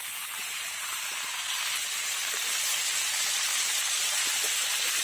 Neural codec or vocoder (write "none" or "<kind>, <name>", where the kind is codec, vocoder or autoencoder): vocoder, BigVGAN v2